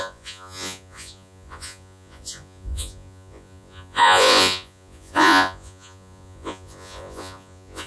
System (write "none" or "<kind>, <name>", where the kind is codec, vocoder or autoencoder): vocoder, Vocos